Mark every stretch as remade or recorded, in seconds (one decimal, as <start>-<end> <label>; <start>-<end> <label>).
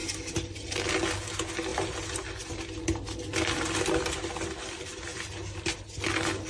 0.0-6.5 recorded